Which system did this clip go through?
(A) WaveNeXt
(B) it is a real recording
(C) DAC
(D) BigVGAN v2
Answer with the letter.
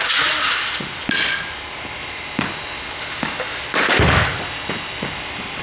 B